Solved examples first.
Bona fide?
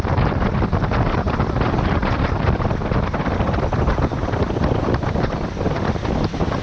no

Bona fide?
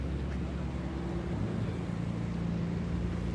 yes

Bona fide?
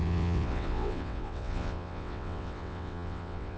no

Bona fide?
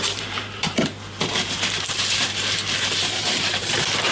no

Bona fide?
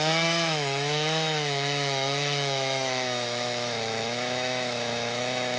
no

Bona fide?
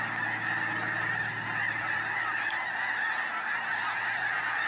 yes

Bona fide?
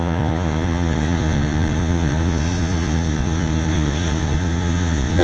no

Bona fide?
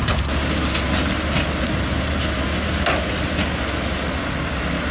yes